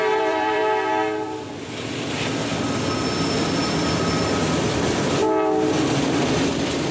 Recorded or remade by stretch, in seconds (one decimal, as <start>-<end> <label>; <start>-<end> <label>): 0.0-0.6 remade; 0.6-4.7 recorded; 4.7-5.2 remade; 5.2-6.9 recorded

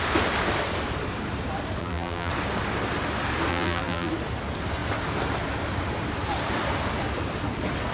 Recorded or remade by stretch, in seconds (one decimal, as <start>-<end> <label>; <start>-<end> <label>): 0.0-1.8 recorded; 1.8-2.3 remade; 2.3-3.5 recorded; 3.5-4.1 remade; 4.1-7.9 recorded

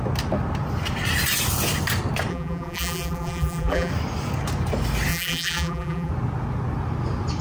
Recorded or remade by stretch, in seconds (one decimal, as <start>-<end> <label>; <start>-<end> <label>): 0.0-2.3 recorded; 2.3-3.9 remade; 3.9-5.1 recorded; 5.1-6.1 remade; 6.1-7.4 recorded

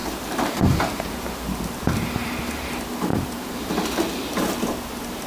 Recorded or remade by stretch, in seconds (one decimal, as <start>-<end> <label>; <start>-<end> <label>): 0.0-1.9 remade; 1.9-3.1 recorded; 3.1-3.7 remade; 3.7-5.3 recorded

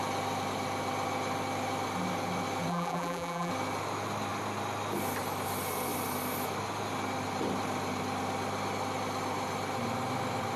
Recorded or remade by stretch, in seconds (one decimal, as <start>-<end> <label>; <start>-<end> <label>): 0.0-2.7 recorded; 2.7-3.5 remade; 3.5-10.6 recorded

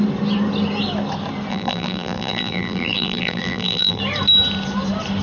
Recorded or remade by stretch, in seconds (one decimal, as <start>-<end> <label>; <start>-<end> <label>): 0.0-1.5 recorded; 1.5-4.0 remade; 4.0-5.2 recorded

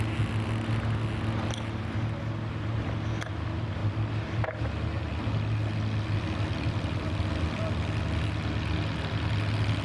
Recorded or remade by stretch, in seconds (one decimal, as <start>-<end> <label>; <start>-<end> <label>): 0.0-9.8 recorded

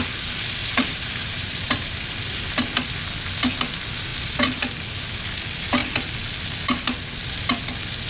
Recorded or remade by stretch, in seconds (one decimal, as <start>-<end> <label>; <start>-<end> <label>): 0.0-0.6 recorded; 0.6-2.6 remade; 2.6-4.1 recorded; 4.1-4.8 remade; 4.8-8.1 recorded